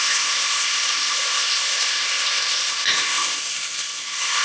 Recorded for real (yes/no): no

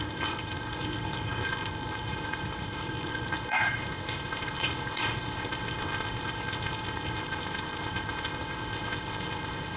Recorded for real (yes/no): no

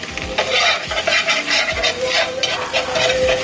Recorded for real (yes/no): yes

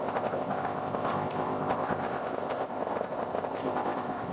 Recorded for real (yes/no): no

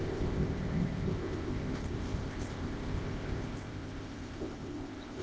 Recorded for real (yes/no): no